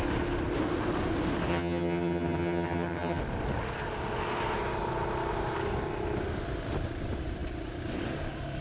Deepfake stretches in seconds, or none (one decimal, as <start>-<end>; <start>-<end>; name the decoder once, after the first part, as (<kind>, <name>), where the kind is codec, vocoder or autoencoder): 1.5-3.2 (vocoder, HiFi-GAN)